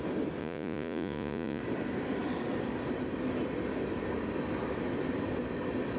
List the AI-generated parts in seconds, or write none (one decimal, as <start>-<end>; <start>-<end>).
0.4-1.6